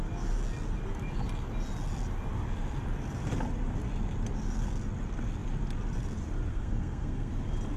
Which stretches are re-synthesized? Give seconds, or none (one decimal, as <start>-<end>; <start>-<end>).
6.5-7.3